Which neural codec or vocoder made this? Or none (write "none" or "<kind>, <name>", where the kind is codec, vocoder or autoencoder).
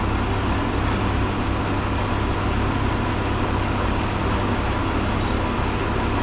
none